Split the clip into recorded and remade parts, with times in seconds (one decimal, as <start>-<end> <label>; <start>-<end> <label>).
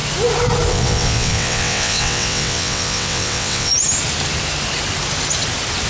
0.0-0.7 recorded; 0.7-3.7 remade; 3.7-5.9 recorded